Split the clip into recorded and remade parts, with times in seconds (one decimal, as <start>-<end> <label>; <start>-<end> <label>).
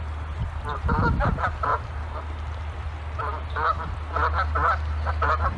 0.0-5.6 recorded